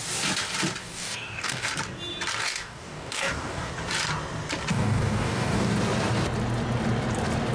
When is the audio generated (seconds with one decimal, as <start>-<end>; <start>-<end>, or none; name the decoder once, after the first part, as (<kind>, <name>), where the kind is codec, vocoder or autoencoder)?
0.8-1.7 (codec, DAC); 2.4-3.7; 4.7-5.7